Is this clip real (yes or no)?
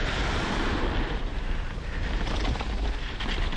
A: yes